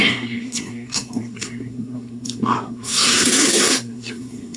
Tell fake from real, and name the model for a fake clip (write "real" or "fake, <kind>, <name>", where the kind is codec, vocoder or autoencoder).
fake, codec, SNAC